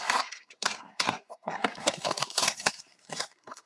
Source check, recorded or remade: remade